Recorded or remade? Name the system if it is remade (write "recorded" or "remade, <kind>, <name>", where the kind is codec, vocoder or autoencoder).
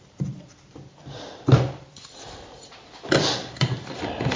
remade, vocoder, BigVGAN v2